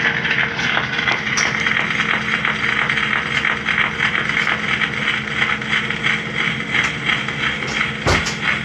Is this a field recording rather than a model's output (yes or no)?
yes